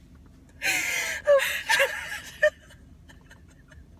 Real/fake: real